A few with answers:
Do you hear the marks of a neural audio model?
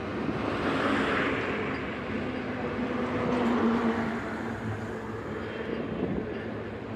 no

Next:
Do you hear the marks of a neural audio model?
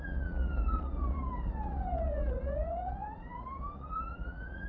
yes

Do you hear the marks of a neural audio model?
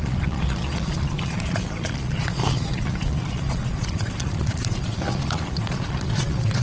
yes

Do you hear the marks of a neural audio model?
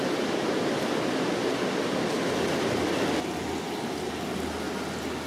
no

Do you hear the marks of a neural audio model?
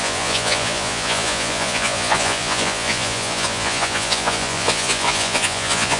yes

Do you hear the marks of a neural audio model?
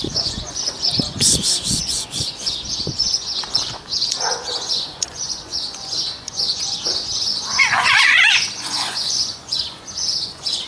yes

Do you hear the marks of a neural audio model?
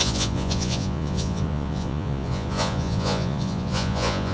yes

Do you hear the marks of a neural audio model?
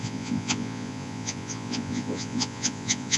yes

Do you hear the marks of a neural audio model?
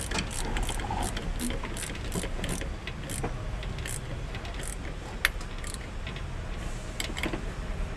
no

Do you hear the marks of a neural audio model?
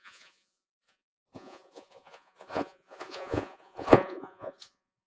yes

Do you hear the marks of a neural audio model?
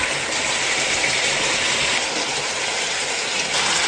no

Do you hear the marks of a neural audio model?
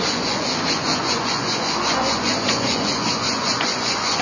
yes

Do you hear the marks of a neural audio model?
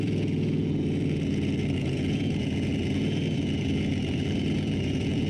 yes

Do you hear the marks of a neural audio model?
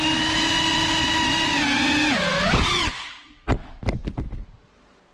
no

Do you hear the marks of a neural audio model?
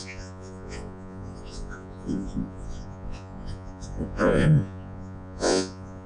yes